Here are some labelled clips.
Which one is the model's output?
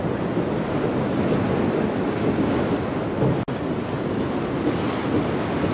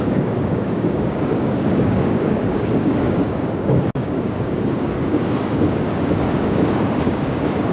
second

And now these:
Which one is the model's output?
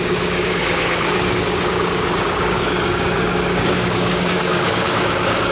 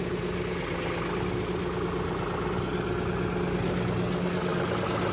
first